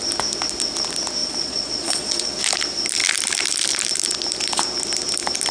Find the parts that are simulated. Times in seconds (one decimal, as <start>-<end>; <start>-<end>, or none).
1.2-2.3